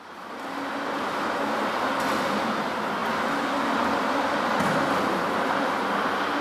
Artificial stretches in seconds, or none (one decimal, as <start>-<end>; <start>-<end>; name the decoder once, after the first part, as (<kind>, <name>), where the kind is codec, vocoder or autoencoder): none